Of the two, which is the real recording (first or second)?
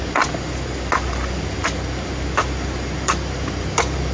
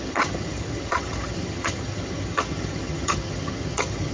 first